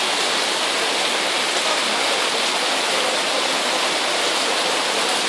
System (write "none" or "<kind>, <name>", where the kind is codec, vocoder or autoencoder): none